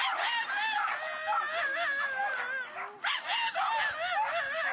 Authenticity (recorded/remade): recorded